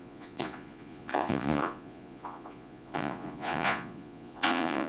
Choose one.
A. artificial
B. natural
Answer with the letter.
A